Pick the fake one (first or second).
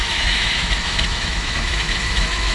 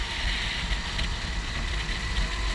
first